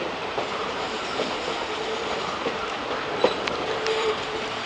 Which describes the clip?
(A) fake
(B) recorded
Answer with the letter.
A